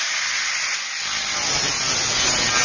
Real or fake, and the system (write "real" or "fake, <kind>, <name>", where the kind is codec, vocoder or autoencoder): real